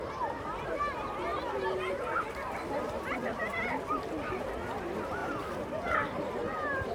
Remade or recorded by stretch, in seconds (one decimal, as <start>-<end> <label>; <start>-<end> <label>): 0.0-3.4 remade; 3.4-3.9 recorded; 3.9-6.9 remade